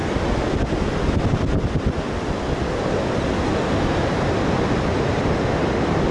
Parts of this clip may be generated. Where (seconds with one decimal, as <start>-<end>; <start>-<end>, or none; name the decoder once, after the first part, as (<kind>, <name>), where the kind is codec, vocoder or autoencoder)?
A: none